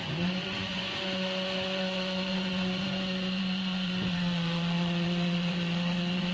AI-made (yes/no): yes